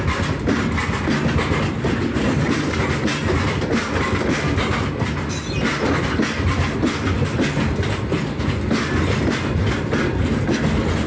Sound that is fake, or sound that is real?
real